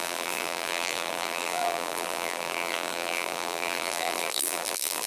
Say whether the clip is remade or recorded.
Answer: remade